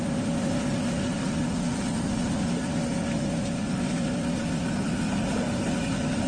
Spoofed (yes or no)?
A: no